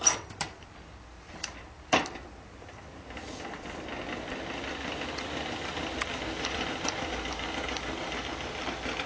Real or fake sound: real